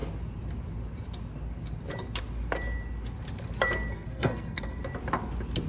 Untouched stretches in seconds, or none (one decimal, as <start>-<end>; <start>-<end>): 0.0-3.9; 4.8-5.7